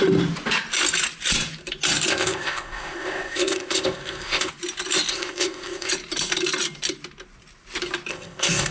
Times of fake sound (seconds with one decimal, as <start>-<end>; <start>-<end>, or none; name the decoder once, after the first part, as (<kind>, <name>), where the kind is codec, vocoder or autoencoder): 2.1-4.5 (codec, ZipCodec); 5.1-5.9; 8.1-8.7